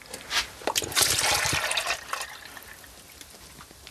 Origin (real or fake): real